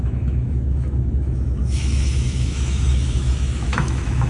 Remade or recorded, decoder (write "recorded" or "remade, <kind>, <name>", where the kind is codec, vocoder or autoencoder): remade, autoencoder, DAC-VAE